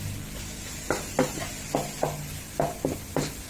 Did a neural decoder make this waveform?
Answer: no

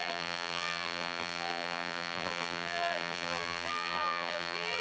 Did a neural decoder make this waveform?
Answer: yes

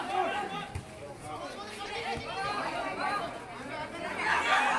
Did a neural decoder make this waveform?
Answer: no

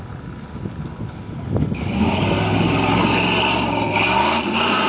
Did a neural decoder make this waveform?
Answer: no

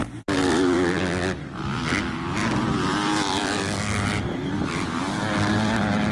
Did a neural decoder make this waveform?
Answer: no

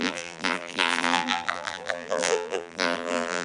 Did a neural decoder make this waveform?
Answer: yes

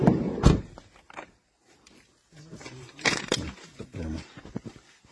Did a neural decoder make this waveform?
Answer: yes